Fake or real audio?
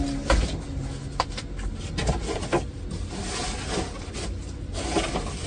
real